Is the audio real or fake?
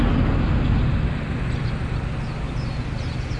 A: real